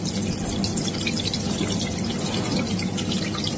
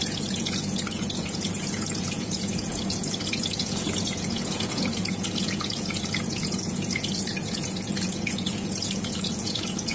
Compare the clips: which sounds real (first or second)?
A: first